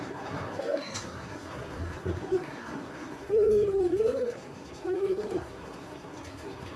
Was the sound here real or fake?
fake